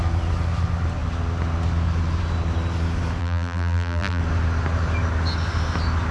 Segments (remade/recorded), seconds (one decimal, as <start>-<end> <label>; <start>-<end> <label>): 0.0-3.2 recorded; 3.2-4.2 remade; 4.2-6.1 recorded